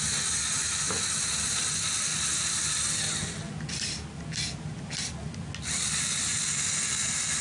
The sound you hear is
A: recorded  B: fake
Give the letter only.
A